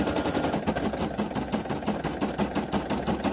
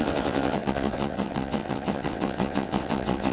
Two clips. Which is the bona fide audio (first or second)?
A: first